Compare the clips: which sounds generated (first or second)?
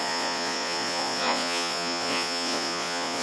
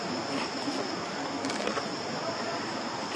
first